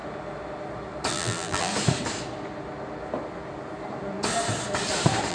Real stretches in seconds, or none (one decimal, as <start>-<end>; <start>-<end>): 0.0-1.1; 1.7-5.3